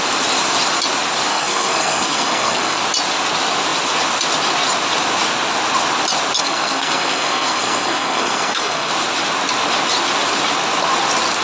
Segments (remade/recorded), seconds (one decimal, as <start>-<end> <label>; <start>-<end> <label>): 0.0-1.3 recorded; 1.3-2.8 remade; 2.8-6.4 recorded; 6.4-8.9 remade; 8.9-11.4 recorded